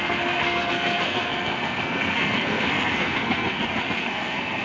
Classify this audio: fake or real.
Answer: fake